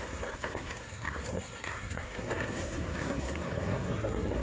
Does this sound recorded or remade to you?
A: remade